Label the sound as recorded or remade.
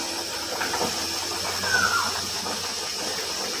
recorded